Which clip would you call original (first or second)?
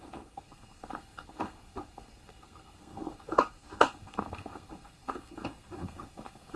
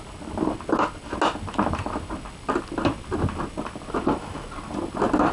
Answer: second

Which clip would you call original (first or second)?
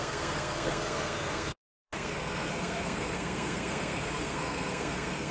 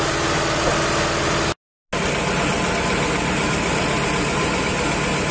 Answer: second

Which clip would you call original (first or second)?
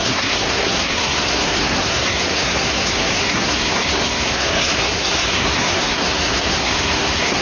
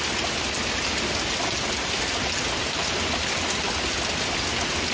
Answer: second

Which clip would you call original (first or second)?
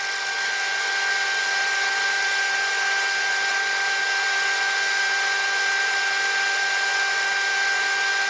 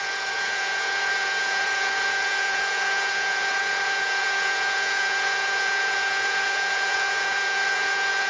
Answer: first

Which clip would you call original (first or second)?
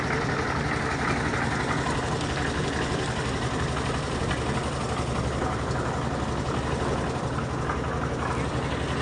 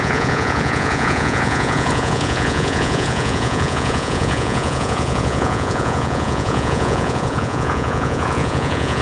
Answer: first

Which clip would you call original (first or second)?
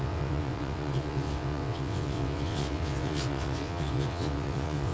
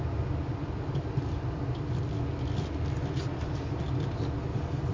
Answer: second